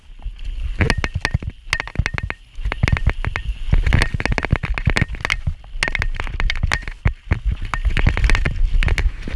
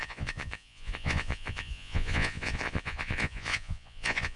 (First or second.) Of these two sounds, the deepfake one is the second